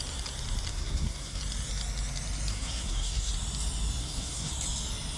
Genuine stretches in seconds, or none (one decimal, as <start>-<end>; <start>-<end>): 0.0-0.7; 1.4-2.5; 3.3-4.0; 4.5-5.2